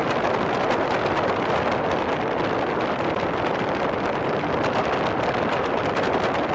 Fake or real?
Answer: real